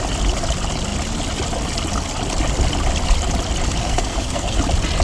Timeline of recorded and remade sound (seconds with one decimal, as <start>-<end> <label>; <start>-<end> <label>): 0.0-3.8 recorded; 3.8-4.6 remade; 4.6-5.0 recorded